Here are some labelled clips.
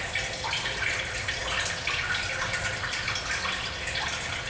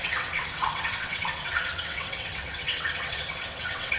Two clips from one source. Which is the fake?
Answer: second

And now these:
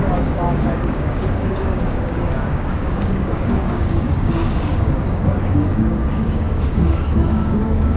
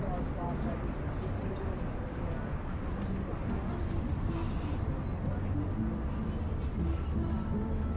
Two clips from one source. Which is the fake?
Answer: first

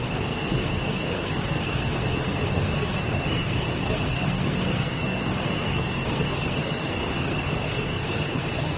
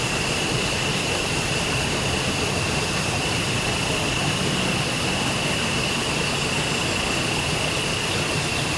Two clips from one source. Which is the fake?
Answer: first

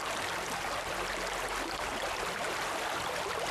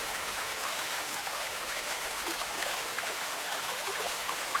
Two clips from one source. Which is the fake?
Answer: second